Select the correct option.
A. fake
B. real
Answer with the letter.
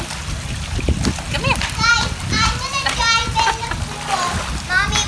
B